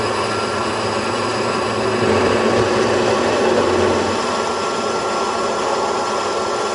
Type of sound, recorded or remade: recorded